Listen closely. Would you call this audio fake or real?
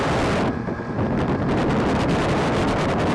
real